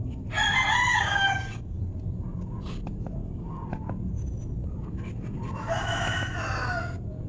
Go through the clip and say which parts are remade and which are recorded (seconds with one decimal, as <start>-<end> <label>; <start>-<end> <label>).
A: 0.0-0.9 recorded; 0.9-1.8 remade; 1.8-3.2 recorded; 3.2-3.7 remade; 3.7-7.3 recorded